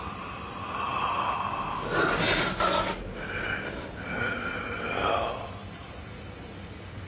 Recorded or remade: recorded